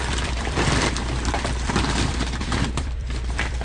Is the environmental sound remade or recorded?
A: remade